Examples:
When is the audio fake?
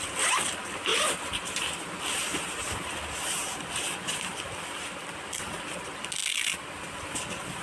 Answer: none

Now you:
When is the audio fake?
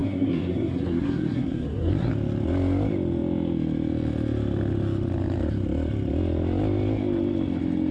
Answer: 0.0-2.1 (codec, SNAC)